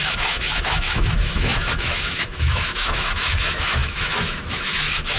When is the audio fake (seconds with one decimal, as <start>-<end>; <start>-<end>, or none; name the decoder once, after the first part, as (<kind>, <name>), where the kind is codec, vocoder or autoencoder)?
0.0-5.2 (autoencoder, DAC-VAE)